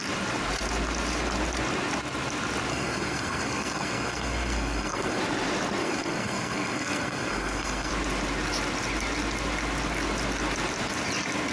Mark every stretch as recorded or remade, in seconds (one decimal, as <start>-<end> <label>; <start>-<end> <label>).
0.0-2.7 recorded; 2.7-5.2 remade; 5.2-5.8 recorded; 5.8-7.9 remade; 7.9-11.5 recorded